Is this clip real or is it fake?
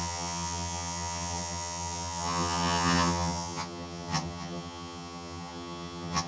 fake